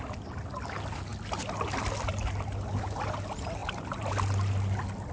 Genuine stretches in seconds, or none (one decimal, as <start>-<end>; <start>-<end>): 0.0-5.1